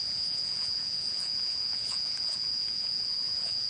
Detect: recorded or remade remade